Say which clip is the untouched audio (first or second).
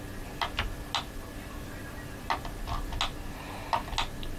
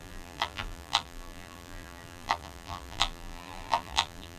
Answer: first